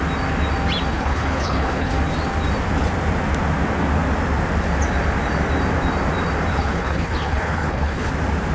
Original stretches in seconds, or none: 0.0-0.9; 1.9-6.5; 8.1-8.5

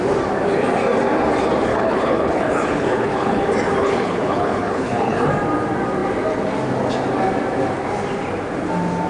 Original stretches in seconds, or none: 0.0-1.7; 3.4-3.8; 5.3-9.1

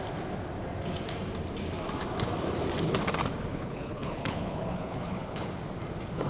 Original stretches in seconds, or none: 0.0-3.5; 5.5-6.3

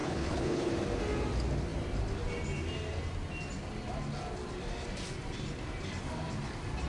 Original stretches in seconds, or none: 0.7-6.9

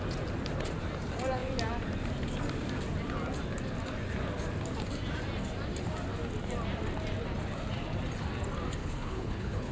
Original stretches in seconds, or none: 0.0-8.8